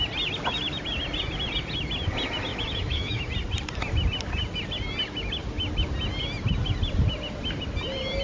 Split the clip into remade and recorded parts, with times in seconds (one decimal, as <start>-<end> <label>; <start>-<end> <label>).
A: 0.0-2.5 recorded; 2.5-3.3 remade; 3.3-8.2 recorded